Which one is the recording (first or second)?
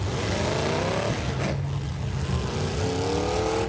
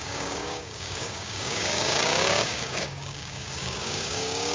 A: first